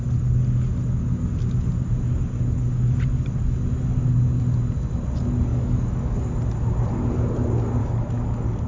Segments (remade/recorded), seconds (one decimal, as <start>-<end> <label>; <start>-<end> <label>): 0.0-5.5 recorded; 5.5-6.3 remade; 6.3-7.8 recorded; 7.8-8.7 remade